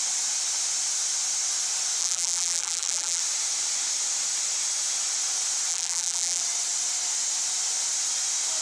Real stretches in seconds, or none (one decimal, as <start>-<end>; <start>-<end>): 0.0-2.0; 3.2-5.7; 6.4-8.6

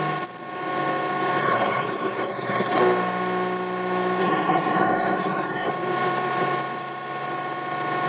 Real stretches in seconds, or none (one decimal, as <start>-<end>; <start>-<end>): 0.0-1.4; 2.8-4.2; 5.7-8.1

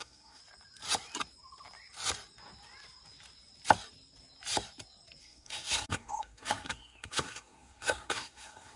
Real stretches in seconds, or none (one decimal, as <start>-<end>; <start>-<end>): 0.4-5.2

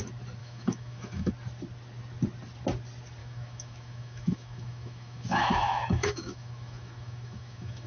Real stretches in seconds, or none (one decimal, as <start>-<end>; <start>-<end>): 0.0-0.4; 1.3-3.2

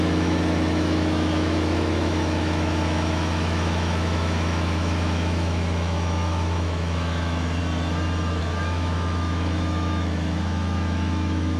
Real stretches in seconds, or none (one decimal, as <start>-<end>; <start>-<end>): 7.6-8.4

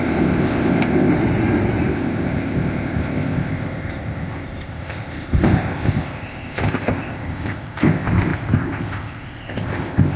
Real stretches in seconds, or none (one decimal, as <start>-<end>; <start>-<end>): 1.1-1.9